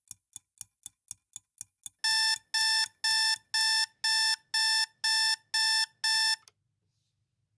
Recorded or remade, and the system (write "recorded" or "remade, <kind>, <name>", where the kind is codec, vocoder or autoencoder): recorded